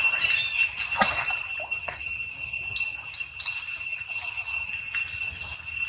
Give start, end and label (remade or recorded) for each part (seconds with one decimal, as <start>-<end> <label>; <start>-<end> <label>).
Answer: 0.0-5.9 recorded